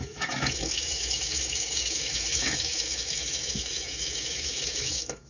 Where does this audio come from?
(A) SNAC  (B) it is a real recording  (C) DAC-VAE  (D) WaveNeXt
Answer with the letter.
C